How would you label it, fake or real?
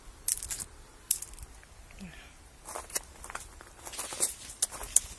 real